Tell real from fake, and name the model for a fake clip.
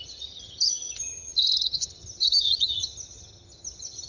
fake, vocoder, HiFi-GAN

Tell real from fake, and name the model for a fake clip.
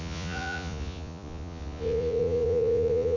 fake, vocoder, Vocos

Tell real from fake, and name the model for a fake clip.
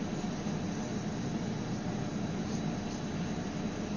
real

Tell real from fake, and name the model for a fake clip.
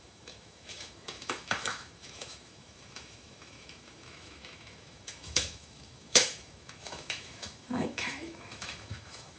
fake, autoencoder, DAC-VAE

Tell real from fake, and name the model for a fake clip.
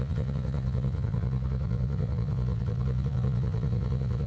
fake, vocoder, Vocos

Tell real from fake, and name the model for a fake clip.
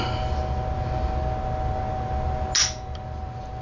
real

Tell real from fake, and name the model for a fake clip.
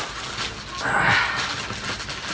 real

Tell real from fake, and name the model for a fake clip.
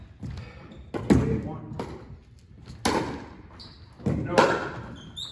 real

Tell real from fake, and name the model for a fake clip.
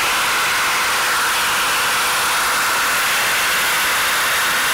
real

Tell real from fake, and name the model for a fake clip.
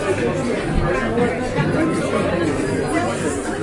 real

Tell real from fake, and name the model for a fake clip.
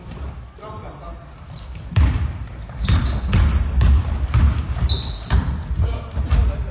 real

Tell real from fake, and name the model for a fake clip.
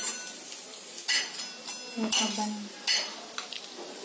real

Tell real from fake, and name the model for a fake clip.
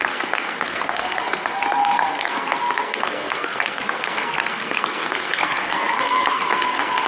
fake, codec, SNAC